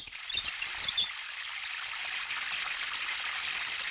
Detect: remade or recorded remade